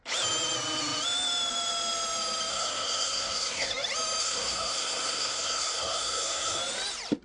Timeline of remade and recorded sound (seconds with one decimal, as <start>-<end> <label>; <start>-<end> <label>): 0.0-2.5 recorded; 2.5-3.7 remade; 3.7-4.2 recorded; 4.2-6.6 remade; 6.6-7.2 recorded